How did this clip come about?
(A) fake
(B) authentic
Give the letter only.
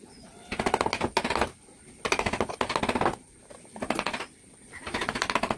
B